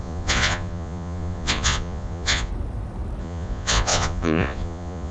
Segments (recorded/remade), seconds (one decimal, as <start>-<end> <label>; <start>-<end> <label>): 0.0-2.5 remade; 2.5-3.2 recorded; 3.2-5.1 remade